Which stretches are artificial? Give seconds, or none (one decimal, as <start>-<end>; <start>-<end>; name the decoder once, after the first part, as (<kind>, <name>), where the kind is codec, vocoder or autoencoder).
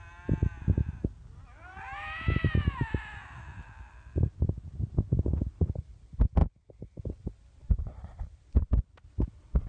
none